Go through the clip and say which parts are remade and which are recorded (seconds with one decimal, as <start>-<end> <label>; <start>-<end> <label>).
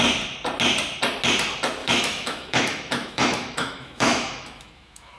0.0-1.8 recorded; 1.8-5.2 remade